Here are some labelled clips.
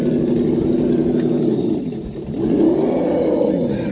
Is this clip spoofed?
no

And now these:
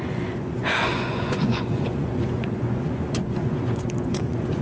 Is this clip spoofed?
yes